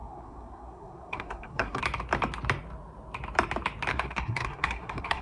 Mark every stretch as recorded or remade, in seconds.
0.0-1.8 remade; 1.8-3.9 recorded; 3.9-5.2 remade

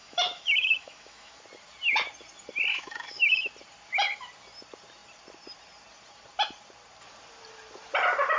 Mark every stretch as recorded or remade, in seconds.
0.0-1.4 remade; 1.4-2.7 recorded; 2.7-3.5 remade; 3.5-8.4 recorded